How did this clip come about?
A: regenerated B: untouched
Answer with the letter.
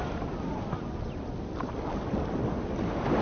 B